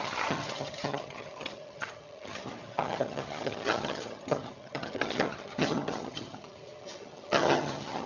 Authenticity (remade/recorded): remade